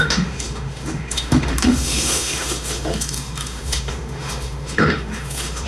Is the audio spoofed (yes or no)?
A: yes